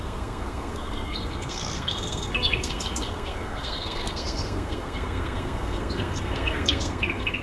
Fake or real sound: fake